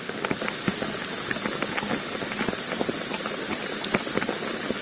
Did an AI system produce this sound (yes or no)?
no